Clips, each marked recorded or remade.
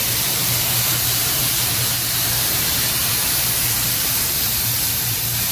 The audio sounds remade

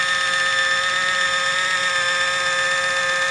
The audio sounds recorded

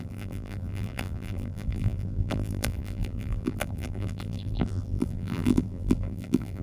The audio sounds remade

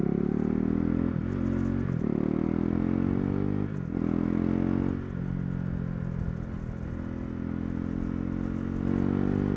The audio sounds recorded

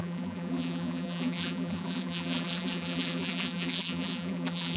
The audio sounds remade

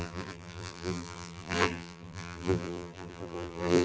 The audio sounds remade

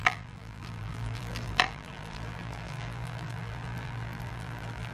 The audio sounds remade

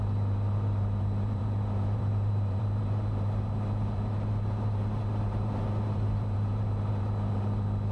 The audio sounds remade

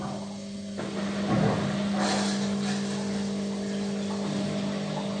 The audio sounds recorded